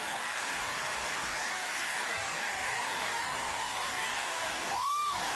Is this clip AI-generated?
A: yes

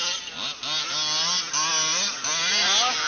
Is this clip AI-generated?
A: no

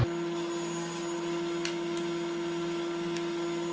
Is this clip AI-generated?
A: no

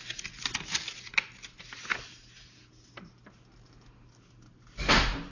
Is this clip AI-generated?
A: no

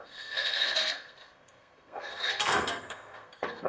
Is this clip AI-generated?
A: yes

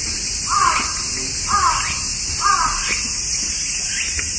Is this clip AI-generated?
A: yes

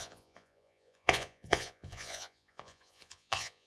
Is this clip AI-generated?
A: yes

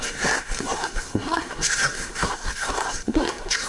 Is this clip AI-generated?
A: yes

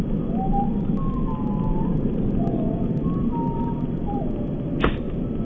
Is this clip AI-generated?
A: no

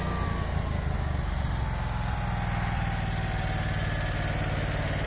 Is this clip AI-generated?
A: no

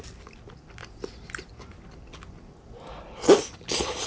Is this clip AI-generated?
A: no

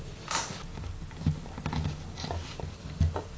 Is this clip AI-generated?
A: no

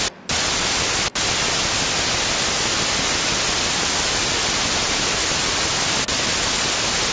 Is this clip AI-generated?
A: no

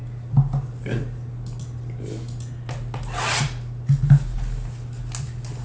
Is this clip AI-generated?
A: no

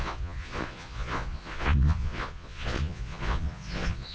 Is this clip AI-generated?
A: yes